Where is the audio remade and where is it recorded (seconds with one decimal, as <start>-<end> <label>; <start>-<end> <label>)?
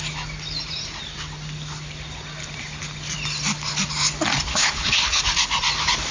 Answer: 0.0-4.5 recorded; 4.5-5.2 remade; 5.2-6.1 recorded